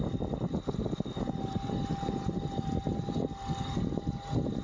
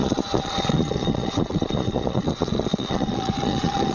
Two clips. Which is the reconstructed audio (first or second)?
second